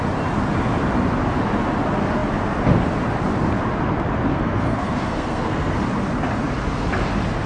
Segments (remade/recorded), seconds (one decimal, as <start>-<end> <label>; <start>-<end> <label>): 0.0-4.3 recorded; 4.3-5.7 remade; 5.7-7.5 recorded